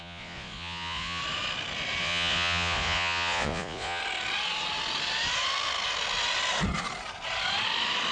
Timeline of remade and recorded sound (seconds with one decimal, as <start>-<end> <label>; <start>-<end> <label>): 0.0-1.2 remade; 1.2-2.0 recorded; 2.0-4.0 remade; 4.0-8.1 recorded